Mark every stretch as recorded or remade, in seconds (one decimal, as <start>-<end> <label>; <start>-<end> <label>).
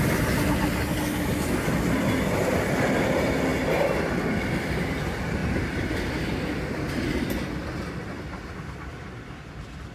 0.0-9.9 recorded